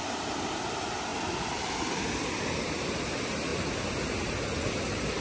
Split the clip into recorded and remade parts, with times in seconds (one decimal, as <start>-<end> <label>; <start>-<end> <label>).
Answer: 0.0-5.2 recorded